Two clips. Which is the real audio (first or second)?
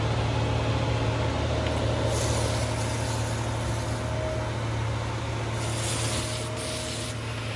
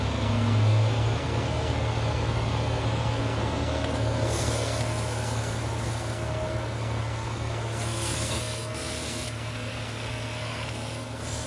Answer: first